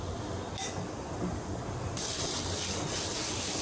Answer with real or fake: real